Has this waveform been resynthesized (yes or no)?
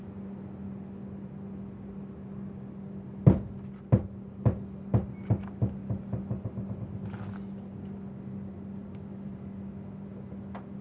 no